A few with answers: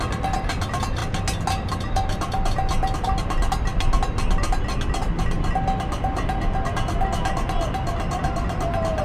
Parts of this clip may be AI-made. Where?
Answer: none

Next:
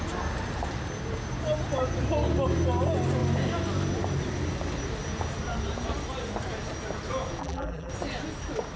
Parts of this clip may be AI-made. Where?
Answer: 7.4-7.9 (vocoder, BigVGAN v2)

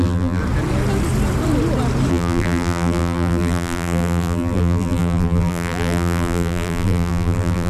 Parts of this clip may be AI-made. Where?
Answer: 0.0-0.4 (vocoder, BigVGAN v2); 2.1-7.7

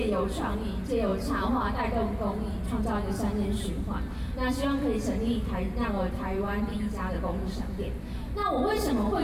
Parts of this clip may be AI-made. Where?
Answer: none